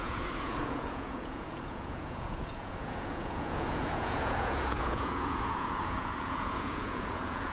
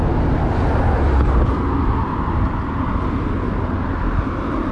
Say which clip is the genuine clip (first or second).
second